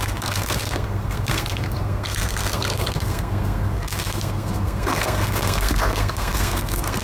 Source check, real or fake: fake